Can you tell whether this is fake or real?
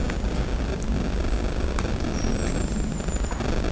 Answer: real